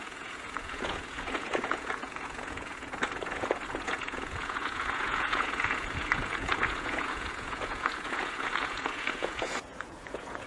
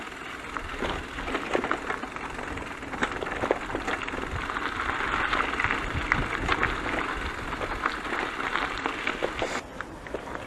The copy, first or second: first